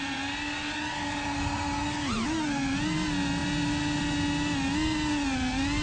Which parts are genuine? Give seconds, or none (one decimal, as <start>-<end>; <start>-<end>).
0.0-5.8